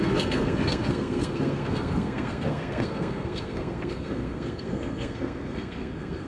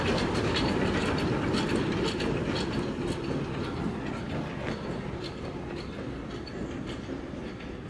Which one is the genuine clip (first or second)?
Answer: second